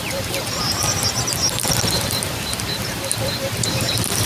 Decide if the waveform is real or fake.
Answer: fake